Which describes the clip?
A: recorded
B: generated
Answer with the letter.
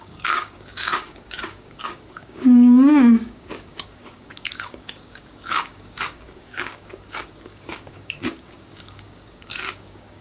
B